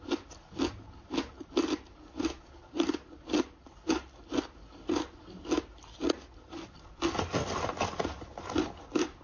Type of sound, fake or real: real